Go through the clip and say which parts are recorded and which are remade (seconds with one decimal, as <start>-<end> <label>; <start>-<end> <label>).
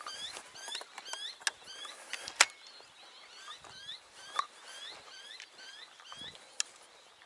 0.0-7.3 recorded